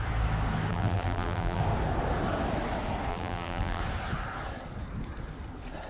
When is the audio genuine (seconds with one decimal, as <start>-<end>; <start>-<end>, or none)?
0.0-0.7; 1.6-3.1; 3.8-5.9